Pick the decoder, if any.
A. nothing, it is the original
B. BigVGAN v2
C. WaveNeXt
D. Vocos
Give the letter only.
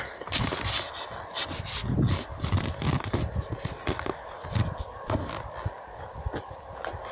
A